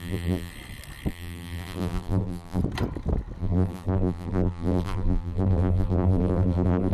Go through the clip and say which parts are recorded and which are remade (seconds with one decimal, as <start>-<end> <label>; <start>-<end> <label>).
0.0-0.5 remade; 0.5-1.1 recorded; 1.1-2.6 remade; 2.6-3.4 recorded; 3.4-6.9 remade